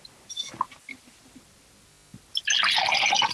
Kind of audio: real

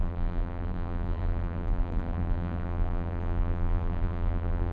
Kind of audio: fake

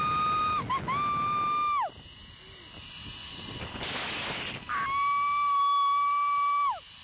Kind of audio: real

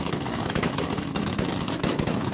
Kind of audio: fake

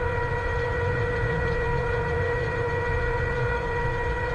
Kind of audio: fake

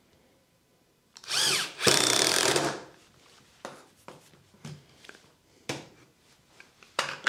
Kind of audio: fake